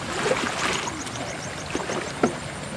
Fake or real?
real